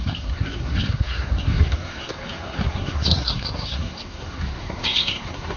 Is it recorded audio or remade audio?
remade